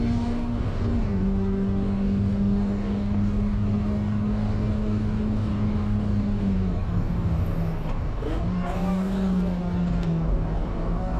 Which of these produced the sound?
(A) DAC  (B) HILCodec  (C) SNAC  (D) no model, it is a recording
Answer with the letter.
A